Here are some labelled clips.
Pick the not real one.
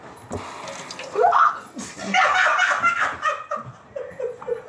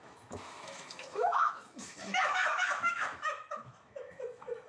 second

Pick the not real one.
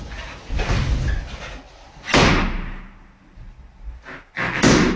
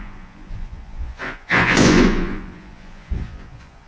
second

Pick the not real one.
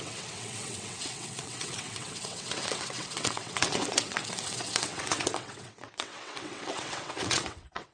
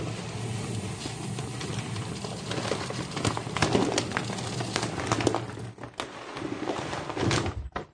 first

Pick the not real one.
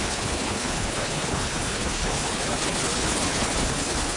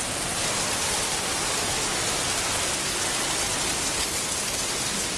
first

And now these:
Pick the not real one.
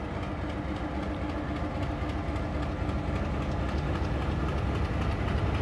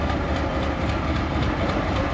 second